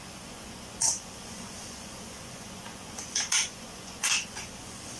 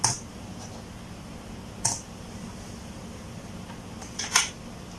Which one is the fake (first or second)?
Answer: first